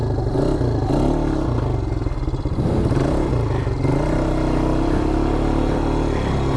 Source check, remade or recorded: recorded